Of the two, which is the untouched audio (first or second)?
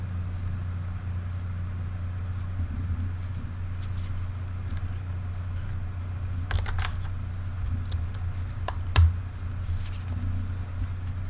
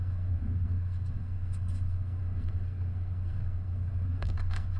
first